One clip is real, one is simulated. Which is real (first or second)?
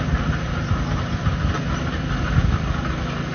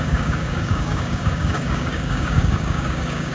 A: first